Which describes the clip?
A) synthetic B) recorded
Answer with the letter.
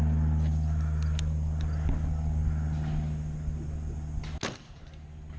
B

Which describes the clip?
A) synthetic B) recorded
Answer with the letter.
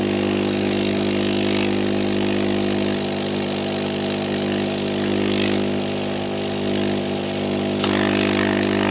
B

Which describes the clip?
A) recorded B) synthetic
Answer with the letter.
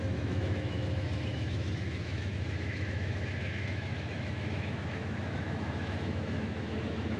B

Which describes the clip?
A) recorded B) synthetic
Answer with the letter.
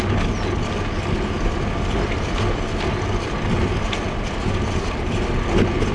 A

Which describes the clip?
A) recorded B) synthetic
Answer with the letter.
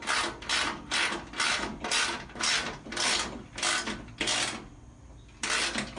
A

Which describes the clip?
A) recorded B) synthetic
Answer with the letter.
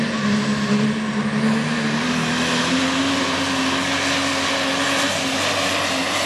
A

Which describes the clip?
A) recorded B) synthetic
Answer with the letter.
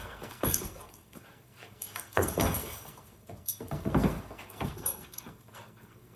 B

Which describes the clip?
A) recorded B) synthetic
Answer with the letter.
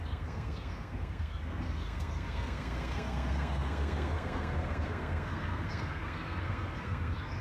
B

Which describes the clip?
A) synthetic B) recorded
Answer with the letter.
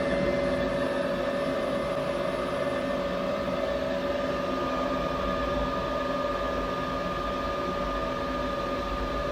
B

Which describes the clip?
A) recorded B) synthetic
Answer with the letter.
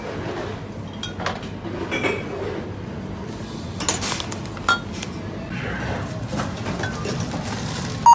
A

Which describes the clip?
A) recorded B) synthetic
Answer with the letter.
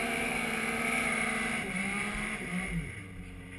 B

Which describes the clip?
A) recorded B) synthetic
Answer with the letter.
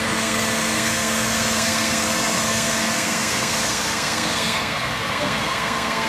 B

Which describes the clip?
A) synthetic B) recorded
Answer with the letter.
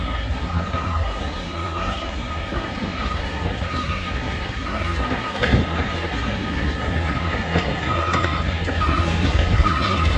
A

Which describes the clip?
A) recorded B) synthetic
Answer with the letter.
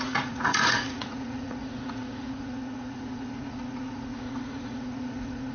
B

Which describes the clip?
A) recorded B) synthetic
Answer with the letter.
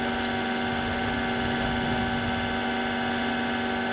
A